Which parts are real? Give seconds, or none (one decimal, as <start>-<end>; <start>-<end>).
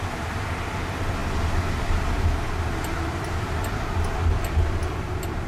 0.0-5.5